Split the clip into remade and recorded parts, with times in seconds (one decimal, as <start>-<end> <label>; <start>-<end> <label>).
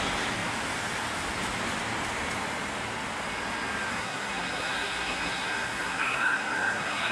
0.0-3.9 recorded; 3.9-7.1 remade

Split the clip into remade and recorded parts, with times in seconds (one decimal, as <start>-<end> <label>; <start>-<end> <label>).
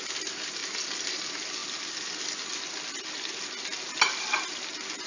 0.0-5.1 recorded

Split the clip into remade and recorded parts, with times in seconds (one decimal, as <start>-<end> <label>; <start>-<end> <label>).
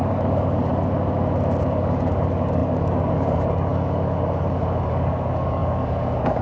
0.0-0.7 remade; 0.7-1.6 recorded; 1.6-6.4 remade